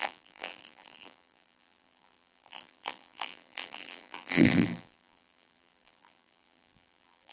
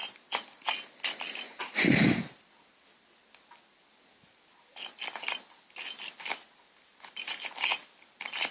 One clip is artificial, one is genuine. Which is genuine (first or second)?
second